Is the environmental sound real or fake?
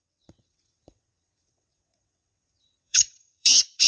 fake